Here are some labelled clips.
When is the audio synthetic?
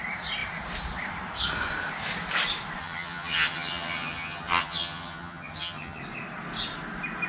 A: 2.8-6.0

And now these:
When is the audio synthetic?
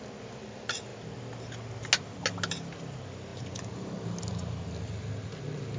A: none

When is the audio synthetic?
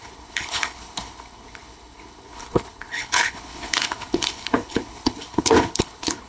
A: 0.0-6.3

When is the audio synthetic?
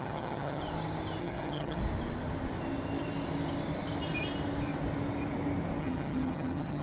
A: 0.0-0.6; 1.2-1.8; 5.8-6.8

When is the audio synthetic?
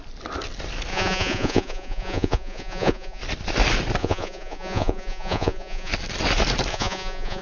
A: 0.9-3.2; 4.0-5.9; 6.7-7.4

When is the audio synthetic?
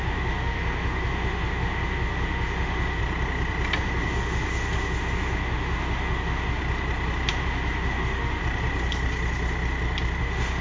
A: 0.0-3.0; 3.8-6.6; 7.3-8.4; 10.2-10.6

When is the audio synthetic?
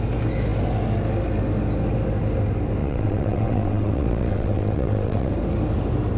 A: 2.8-5.3